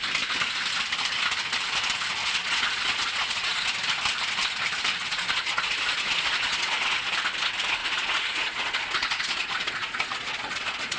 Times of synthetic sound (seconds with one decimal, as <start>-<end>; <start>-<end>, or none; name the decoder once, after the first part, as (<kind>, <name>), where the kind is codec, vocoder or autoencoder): 2.2-3.7 (vocoder, Vocos); 5.0-7.1; 7.8-11.0